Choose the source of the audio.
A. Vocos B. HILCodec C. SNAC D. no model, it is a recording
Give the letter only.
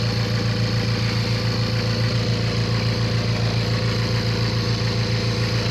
D